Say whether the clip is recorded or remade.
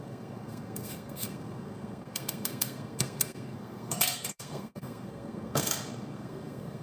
remade